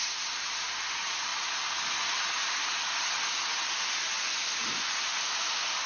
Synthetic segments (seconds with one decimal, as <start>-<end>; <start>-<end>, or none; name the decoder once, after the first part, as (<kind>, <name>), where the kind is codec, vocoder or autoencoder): none